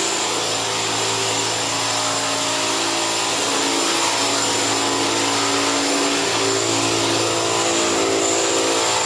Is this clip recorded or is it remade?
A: recorded